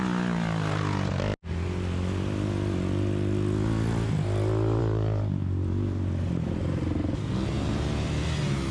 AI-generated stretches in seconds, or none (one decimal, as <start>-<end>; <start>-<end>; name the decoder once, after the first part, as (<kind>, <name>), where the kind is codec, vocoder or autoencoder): none